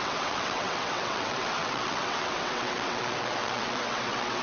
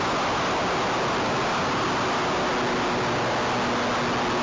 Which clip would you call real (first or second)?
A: second